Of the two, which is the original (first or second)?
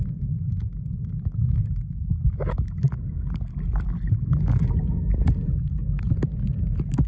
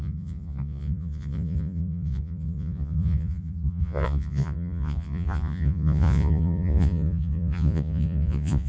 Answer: first